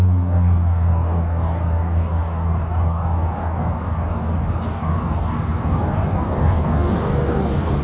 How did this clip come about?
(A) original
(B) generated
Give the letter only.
B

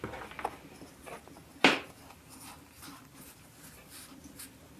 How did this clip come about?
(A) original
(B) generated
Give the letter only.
A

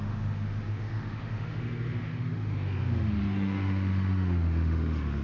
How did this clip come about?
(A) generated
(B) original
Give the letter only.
A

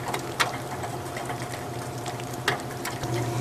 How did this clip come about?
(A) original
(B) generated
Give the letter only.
A